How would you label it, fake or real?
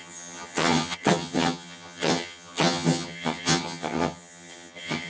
fake